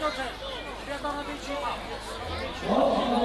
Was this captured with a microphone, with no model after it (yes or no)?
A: yes